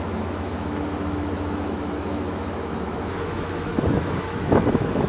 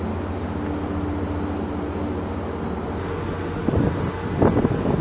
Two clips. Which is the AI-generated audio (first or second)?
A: first